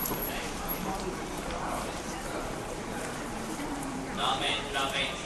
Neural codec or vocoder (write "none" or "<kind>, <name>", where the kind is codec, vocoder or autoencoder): vocoder, BigVGAN v2